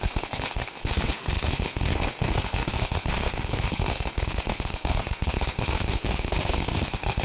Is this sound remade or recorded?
remade